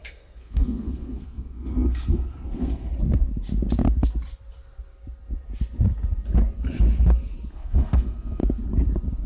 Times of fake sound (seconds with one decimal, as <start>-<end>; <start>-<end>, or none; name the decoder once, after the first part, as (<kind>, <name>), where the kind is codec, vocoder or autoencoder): 0.0-2.9 (codec, SNAC); 7.5-8.4